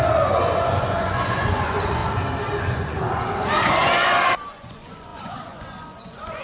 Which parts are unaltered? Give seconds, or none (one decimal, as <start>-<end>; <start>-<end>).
2.0-2.6